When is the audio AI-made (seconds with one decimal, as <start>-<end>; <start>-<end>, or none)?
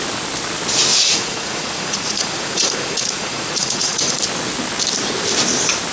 0.9-4.2